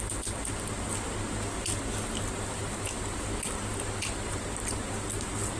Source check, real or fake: real